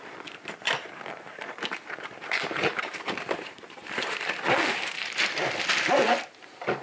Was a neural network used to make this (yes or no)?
yes